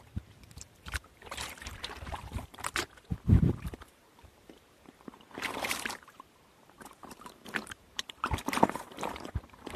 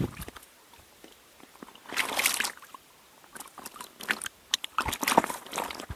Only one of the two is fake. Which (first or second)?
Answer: first